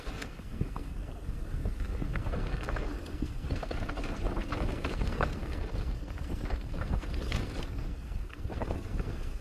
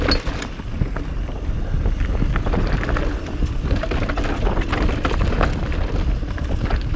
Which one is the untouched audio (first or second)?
second